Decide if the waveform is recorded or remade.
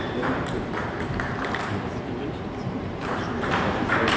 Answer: remade